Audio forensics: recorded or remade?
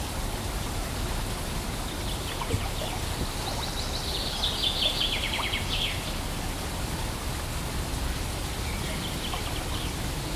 recorded